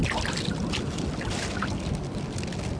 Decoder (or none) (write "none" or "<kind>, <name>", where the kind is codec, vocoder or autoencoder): none